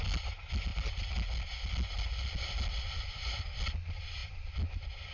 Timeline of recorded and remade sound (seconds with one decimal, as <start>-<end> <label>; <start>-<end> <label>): 0.0-5.1 recorded